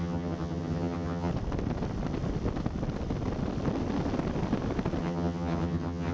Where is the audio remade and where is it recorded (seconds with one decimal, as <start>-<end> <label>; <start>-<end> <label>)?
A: 0.0-1.3 remade; 1.3-5.0 recorded; 5.0-6.1 remade